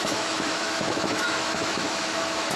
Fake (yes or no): yes